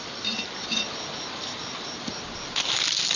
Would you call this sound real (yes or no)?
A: yes